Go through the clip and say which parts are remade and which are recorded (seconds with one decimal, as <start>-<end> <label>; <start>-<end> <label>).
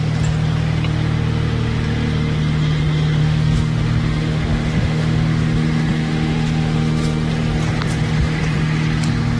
0.0-3.2 recorded; 3.2-7.3 remade; 7.3-9.4 recorded